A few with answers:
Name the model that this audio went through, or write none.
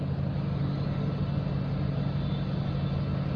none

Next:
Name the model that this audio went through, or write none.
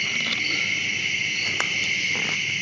none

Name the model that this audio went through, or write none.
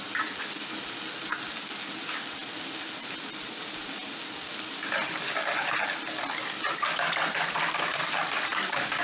none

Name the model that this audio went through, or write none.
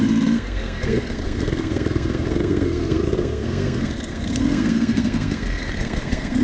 codec, SNAC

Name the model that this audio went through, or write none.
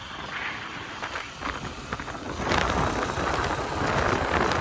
none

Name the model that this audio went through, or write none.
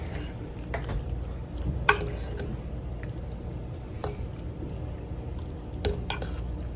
none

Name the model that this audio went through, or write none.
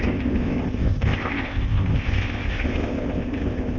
codec, ZipCodec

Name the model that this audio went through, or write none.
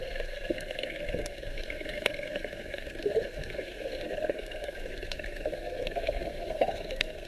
codec, SNAC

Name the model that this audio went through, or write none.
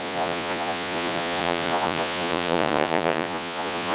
vocoder, Vocos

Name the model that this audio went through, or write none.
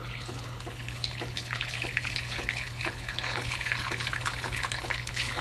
codec, HILCodec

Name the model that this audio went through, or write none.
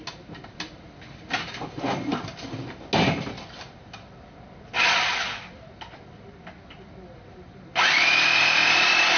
none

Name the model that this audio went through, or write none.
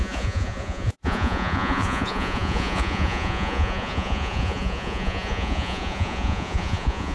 vocoder, Vocos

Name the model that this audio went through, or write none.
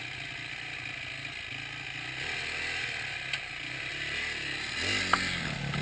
none